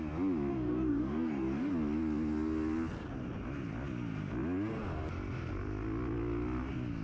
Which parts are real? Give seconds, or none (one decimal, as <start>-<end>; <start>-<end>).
0.0-0.5; 1.7-7.0